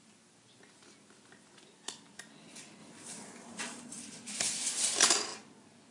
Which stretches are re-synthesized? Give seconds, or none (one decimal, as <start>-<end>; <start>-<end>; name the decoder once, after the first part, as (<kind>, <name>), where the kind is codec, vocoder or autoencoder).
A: none